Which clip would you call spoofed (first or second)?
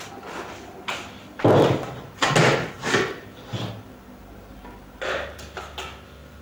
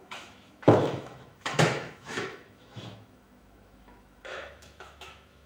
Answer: second